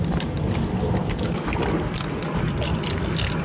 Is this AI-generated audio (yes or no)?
no